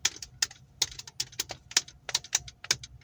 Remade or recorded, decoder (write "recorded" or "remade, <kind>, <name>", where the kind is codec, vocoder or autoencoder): recorded